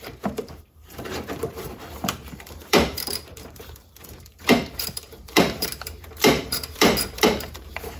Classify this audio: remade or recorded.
remade